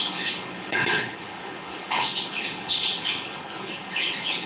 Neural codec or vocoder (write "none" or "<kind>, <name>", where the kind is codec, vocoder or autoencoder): codec, HILCodec